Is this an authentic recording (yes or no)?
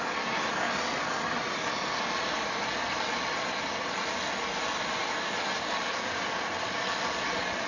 yes